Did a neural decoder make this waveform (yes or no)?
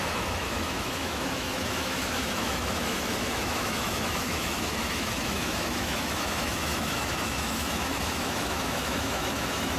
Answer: yes